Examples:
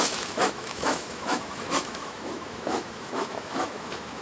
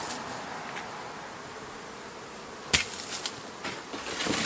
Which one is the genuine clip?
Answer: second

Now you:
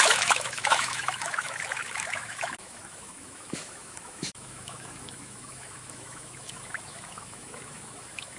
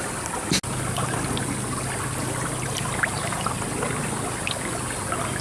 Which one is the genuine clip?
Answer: second